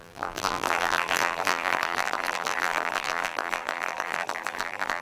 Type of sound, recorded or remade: remade